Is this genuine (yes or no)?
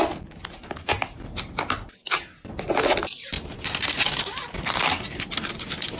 yes